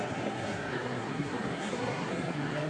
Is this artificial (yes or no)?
yes